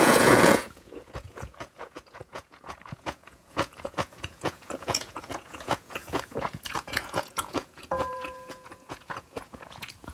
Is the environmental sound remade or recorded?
remade